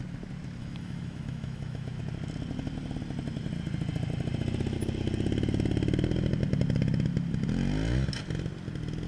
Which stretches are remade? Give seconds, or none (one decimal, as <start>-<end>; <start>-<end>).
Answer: 0.6-2.0